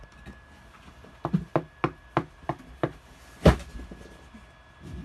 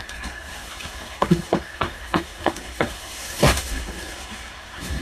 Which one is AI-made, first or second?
second